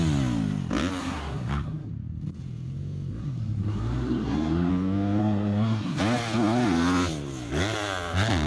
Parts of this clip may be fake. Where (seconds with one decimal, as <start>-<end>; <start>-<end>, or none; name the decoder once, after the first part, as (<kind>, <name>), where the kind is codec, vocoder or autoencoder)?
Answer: 1.0-1.9 (codec, SNAC); 3.2-4.7; 5.2-6.0